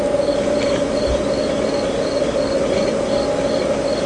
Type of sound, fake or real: real